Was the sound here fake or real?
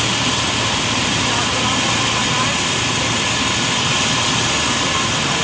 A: real